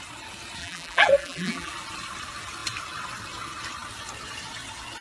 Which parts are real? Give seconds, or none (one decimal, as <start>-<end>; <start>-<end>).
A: 0.0-0.6; 1.7-5.0

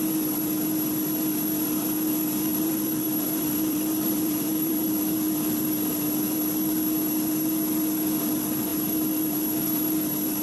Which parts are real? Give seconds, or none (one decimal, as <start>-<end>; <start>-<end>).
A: 0.0-2.5; 4.8-10.4